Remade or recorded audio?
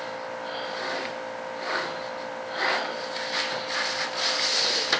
recorded